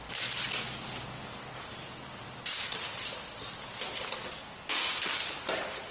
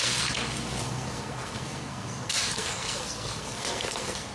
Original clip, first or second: first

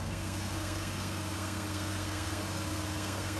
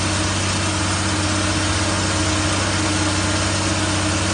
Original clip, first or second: second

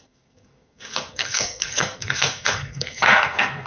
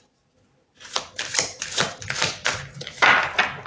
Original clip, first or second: second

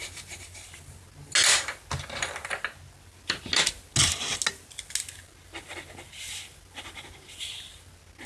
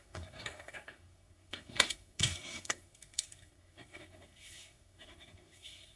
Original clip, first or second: first